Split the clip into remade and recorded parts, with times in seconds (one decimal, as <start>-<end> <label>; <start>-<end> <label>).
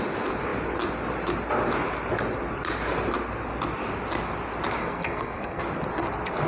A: 0.0-4.8 recorded; 4.8-5.6 remade; 5.6-6.5 recorded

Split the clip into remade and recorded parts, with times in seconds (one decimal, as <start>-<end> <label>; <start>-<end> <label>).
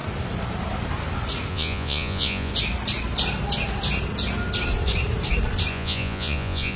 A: 0.0-1.5 recorded; 1.5-2.5 remade; 2.5-5.7 recorded; 5.7-6.8 remade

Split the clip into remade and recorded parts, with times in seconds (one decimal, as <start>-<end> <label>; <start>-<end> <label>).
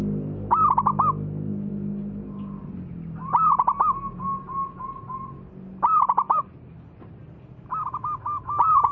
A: 0.0-8.9 recorded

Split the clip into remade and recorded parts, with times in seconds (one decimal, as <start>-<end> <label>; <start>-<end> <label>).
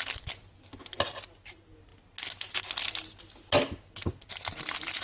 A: 0.0-5.0 recorded